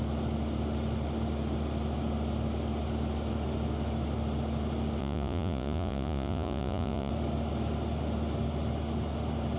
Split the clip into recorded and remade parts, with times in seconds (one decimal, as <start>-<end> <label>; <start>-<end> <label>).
0.0-5.0 recorded; 5.0-7.1 remade; 7.1-9.6 recorded